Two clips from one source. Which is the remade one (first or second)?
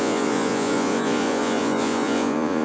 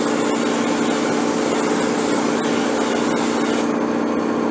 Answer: first